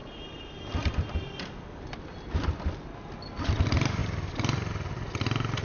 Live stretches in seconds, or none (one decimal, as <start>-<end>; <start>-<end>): 0.0-5.6